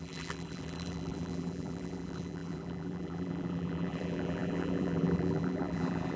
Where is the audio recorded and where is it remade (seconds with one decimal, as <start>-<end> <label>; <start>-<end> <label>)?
0.0-6.2 remade